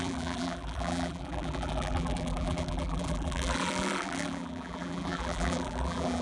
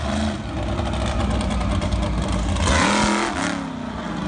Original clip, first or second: second